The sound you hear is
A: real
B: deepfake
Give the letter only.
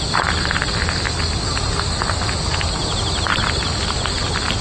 A